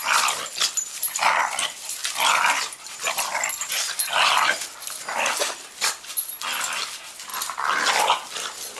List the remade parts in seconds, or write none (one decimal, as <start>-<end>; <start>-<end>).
7.3-7.9